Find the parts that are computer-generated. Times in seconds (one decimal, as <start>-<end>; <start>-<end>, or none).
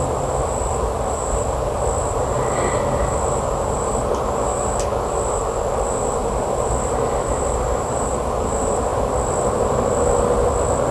6.2-8.0; 8.9-9.9